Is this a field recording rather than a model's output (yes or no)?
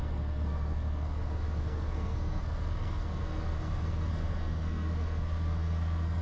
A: no